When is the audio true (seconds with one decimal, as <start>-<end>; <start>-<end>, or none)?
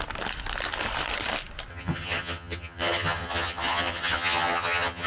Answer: 0.0-1.7